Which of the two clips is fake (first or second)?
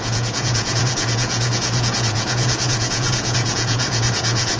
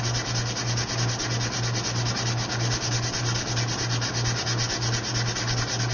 first